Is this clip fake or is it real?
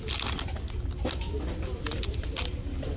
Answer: real